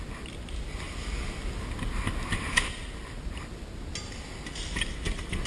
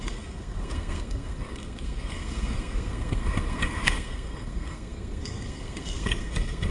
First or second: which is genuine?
first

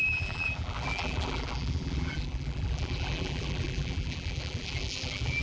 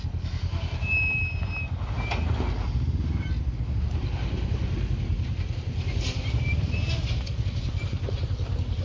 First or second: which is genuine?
second